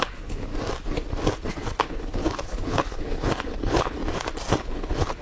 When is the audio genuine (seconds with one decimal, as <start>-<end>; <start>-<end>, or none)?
0.5-1.5; 4.0-4.6